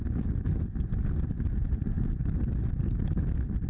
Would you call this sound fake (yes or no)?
no